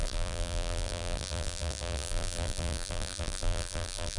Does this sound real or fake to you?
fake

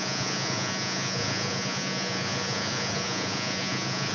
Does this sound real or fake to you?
fake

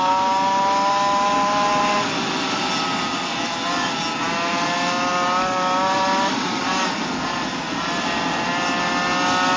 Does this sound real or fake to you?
real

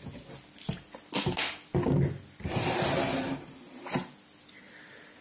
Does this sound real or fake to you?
real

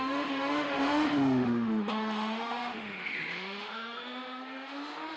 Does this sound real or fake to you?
fake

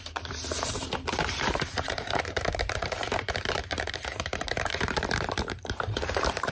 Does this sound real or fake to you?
fake